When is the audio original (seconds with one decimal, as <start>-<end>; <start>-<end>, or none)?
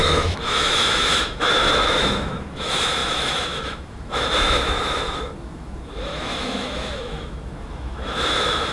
none